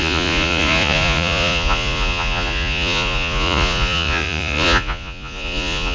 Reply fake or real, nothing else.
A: fake